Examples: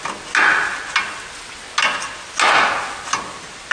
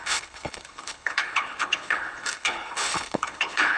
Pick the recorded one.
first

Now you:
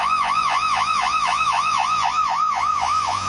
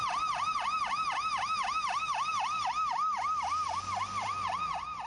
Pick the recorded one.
second